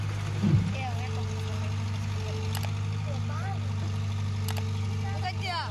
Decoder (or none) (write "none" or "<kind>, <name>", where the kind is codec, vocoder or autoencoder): none